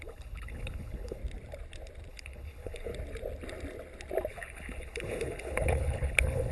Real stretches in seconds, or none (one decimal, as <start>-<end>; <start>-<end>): 1.2-2.1; 2.9-4.3